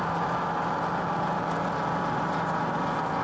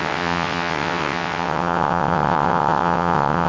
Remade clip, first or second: second